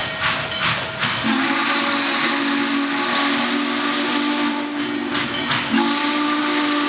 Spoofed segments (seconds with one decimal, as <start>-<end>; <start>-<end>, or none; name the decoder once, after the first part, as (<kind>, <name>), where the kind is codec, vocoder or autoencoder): none